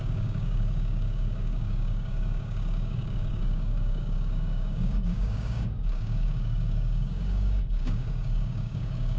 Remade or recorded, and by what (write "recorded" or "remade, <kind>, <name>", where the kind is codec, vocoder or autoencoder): remade, codec, DAC